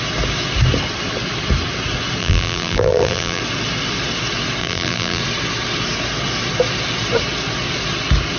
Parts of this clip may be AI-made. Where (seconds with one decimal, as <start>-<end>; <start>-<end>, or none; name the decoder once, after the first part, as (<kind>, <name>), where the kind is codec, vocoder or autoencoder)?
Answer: 2.2-3.4 (vocoder, BigVGAN v2); 4.6-5.2